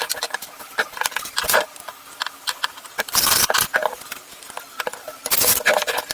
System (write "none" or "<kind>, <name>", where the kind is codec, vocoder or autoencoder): vocoder, BigVGAN v2